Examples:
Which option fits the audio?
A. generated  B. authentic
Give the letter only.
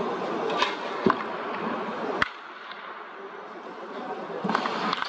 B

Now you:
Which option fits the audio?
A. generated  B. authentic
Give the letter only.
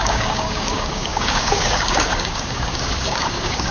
A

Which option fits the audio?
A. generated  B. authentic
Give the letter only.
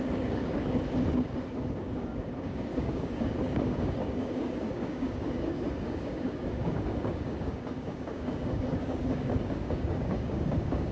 A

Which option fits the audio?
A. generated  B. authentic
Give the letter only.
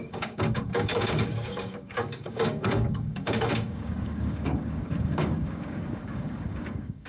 A